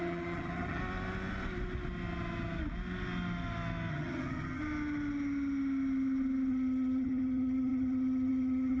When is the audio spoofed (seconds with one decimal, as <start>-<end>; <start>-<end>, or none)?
0.0-0.8; 3.9-4.6; 6.5-8.8